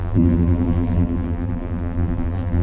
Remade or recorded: remade